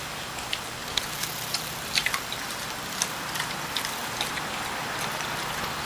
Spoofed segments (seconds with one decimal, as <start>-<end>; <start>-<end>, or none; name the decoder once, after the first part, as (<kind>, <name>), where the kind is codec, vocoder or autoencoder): 0.8-4.3 (vocoder, BigVGAN v2)